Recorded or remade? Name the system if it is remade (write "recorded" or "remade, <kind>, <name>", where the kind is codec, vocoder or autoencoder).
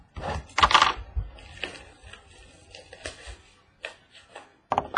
recorded